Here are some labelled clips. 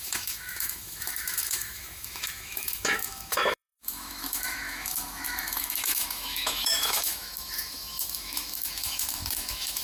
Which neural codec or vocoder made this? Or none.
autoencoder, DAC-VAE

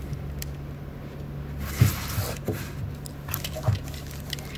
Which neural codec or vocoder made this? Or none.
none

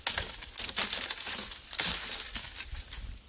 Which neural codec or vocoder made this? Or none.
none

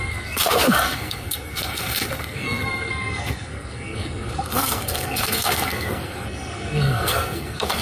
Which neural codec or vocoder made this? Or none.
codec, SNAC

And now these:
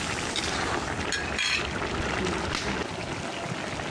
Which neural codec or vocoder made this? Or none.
none